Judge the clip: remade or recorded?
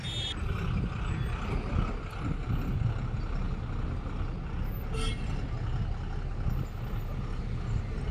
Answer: recorded